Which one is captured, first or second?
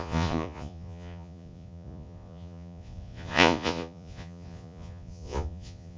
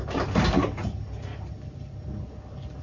second